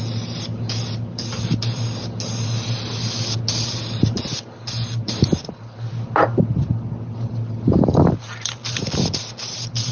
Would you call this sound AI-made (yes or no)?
no